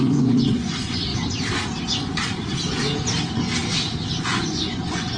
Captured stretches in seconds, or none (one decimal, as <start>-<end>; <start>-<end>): 1.1-4.2